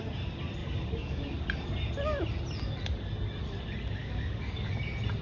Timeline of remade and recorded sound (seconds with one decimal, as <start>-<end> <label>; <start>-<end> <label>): 0.0-0.6 recorded; 0.6-1.3 remade; 1.3-4.0 recorded; 4.0-4.7 remade; 4.7-5.2 recorded